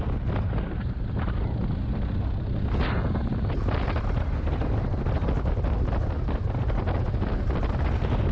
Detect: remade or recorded recorded